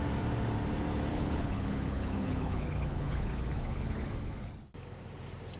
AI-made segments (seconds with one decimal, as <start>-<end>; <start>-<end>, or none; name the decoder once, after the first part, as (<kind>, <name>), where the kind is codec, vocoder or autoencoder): 1.1-4.5 (codec, HILCodec)